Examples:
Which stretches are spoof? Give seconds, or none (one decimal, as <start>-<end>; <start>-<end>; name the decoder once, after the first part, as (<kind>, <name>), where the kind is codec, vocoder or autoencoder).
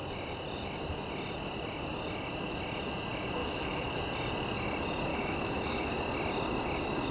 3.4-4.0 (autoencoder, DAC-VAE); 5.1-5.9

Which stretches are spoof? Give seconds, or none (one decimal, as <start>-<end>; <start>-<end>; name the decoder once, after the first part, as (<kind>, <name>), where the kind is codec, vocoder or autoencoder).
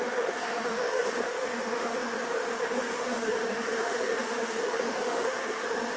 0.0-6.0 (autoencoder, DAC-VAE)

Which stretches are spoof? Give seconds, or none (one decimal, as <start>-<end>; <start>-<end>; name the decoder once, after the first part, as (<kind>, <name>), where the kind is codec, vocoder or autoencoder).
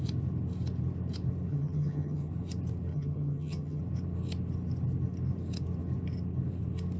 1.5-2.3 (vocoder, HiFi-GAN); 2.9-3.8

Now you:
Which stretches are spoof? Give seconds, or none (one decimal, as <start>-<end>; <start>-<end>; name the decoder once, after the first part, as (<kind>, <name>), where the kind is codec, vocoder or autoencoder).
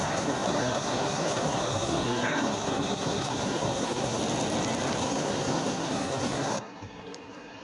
0.0-4.2 (codec, SNAC); 5.0-7.6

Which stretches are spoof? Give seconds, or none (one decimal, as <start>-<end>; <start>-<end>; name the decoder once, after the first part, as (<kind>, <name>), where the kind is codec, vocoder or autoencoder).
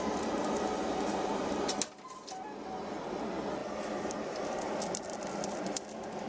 3.6-6.3 (vocoder, BigVGAN v2)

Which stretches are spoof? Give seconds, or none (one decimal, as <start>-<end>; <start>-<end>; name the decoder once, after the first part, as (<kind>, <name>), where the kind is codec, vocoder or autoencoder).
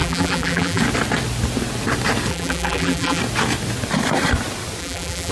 0.0-0.8 (vocoder, BigVGAN v2); 2.3-3.2; 4.8-5.3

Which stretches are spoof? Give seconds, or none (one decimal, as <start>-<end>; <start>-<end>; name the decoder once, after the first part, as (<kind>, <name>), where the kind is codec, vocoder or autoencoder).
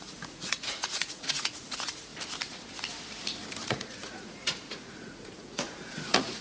0.0-2.1 (vocoder, Vocos); 3.7-6.4